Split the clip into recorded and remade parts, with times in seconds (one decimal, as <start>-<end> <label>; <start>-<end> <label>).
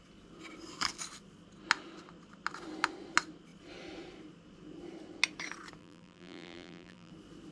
0.0-5.8 recorded; 5.8-7.1 remade; 7.1-7.5 recorded